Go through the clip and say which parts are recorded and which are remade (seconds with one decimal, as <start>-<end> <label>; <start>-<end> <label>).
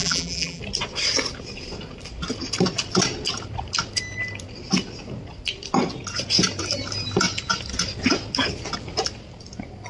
0.0-0.6 remade; 0.6-9.9 recorded